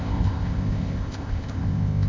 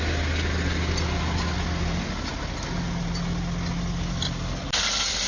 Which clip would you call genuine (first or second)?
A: second